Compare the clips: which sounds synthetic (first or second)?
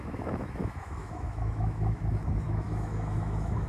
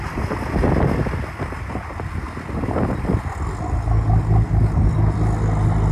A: first